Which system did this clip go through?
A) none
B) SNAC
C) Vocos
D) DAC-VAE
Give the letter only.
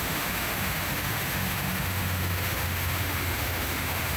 D